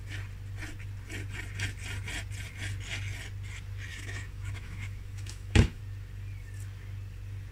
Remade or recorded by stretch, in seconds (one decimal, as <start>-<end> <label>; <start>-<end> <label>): 0.0-3.9 recorded; 3.9-5.8 remade; 5.8-7.5 recorded